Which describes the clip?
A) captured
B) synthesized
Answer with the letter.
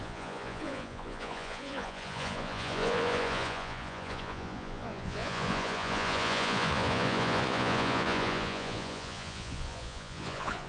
B